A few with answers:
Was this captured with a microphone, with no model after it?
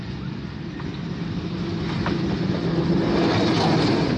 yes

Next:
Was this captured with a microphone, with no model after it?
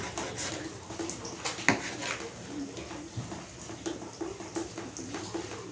yes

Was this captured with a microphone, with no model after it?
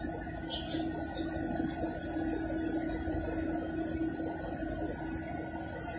yes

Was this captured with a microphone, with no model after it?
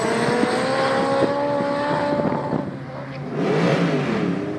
yes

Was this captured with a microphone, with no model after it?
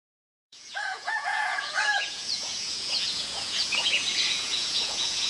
no